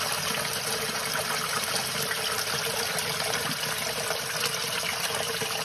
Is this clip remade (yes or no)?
no